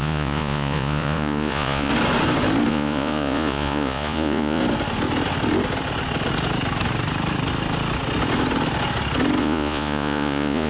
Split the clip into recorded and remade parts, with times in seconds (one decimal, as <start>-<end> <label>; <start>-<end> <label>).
0.0-1.9 remade; 1.9-2.7 recorded; 2.7-4.6 remade; 4.6-9.4 recorded; 9.4-10.7 remade